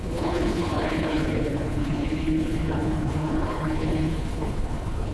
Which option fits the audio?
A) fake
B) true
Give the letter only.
A